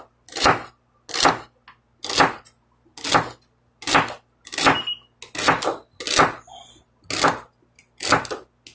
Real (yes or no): yes